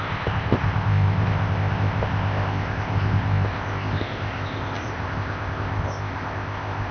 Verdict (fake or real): fake